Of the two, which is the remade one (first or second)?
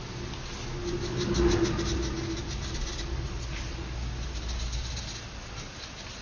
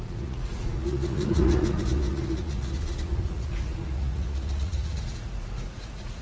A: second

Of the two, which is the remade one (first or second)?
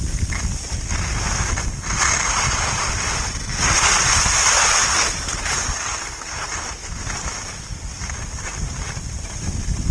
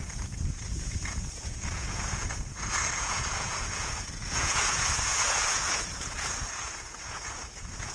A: second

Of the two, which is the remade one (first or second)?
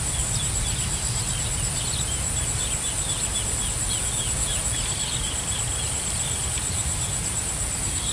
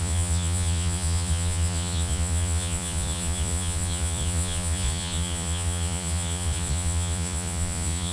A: second